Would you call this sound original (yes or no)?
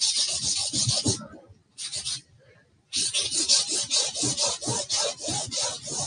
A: yes